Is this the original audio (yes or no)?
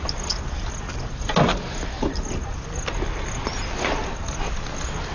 yes